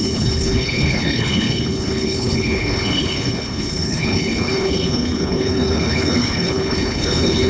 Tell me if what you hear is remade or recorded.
remade